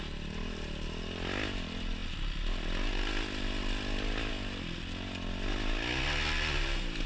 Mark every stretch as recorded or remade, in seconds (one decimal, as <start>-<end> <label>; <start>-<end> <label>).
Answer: 0.0-7.1 recorded